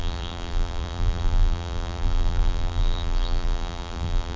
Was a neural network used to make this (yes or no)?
yes